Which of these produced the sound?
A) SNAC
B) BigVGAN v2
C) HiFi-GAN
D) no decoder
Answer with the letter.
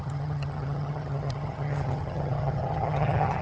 C